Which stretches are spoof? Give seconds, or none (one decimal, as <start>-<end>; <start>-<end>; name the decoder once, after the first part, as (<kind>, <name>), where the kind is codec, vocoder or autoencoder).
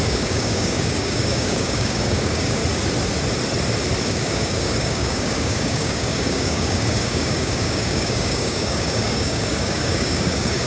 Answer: 0.0-2.6 (codec, DAC); 4.0-10.7